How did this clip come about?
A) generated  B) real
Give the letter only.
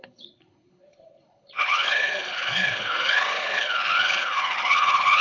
A